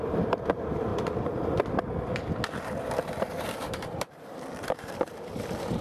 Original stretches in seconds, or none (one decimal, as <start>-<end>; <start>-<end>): 0.9-2.8